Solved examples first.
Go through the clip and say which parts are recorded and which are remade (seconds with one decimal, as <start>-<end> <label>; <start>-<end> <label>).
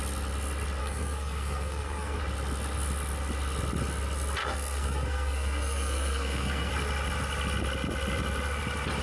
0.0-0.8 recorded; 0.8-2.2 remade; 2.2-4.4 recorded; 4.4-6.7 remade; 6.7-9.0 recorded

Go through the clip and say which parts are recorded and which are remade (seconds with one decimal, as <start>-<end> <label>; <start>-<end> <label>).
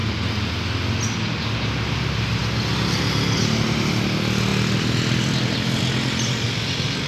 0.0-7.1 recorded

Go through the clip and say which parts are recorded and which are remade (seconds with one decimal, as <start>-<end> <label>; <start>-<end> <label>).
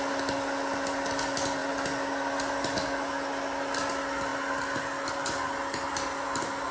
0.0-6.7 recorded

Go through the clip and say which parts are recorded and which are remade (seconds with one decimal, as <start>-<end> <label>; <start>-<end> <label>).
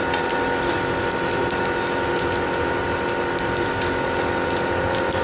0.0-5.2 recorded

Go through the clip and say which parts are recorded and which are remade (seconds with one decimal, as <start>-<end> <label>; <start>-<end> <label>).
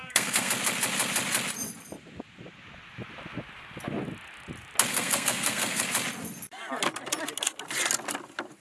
0.0-0.5 remade; 0.5-4.9 recorded; 4.9-5.8 remade; 5.8-8.6 recorded